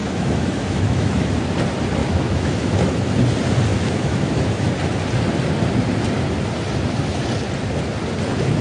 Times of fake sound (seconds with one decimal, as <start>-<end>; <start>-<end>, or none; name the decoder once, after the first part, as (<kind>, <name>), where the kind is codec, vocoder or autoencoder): 0.0-1.4 (autoencoder, DAC-VAE); 2.0-3.1; 3.7-4.7